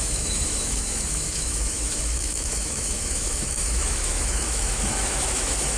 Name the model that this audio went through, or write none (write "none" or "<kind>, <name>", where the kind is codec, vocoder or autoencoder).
autoencoder, DAC-VAE